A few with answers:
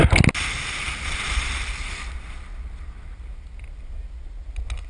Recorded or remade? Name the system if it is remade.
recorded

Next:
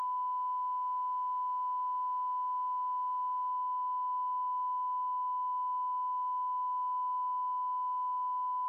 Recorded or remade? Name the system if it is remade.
recorded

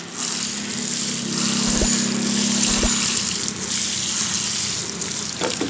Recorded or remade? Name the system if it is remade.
recorded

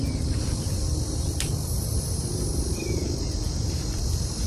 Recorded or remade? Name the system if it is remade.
remade, vocoder, BigVGAN v2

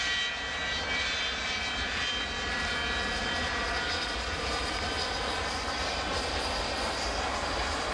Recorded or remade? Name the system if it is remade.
recorded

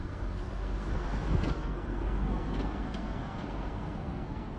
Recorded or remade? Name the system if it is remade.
remade, codec, SNAC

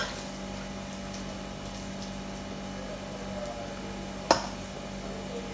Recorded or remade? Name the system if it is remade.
recorded